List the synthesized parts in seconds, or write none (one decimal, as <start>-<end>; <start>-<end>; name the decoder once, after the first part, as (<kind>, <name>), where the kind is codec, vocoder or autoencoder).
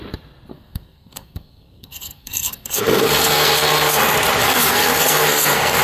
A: 0.5-4.0 (codec, SNAC); 4.4-5.8